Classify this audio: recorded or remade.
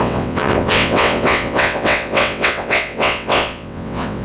remade